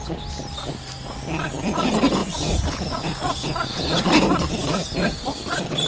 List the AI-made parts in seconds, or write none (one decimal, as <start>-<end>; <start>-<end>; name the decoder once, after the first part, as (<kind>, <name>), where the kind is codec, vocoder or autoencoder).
2.2-4.0 (vocoder, Vocos)